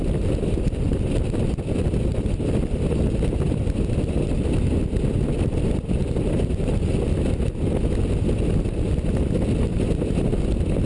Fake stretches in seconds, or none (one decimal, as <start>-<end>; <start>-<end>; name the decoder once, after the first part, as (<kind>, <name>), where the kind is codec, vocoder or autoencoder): 2.1-2.6 (vocoder, BigVGAN v2); 6.0-6.7; 9.7-10.3